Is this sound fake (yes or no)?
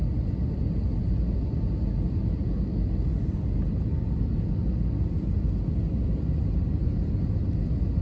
no